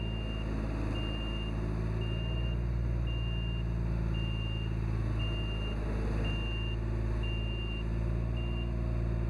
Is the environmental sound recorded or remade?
recorded